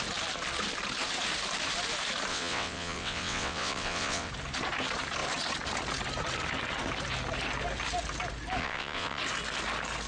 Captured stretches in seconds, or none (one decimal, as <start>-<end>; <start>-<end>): 0.0-2.3; 4.3-8.6; 9.2-10.1